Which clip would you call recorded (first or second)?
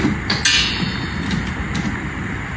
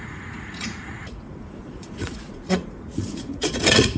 first